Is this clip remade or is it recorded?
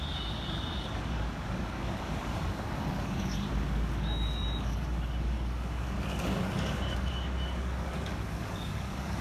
remade